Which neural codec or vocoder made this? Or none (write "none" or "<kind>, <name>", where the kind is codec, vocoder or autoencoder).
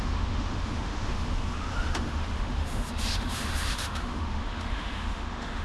autoencoder, DAC-VAE